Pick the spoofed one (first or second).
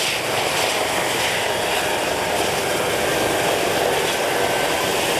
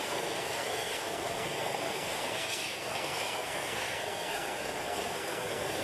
second